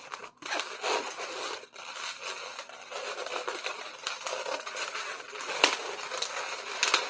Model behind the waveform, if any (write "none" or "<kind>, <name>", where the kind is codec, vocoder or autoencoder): none